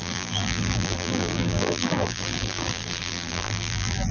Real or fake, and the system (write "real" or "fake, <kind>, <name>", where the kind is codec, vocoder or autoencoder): fake, vocoder, BigVGAN v2